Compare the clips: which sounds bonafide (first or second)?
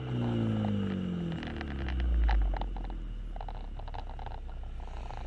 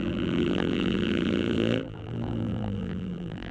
first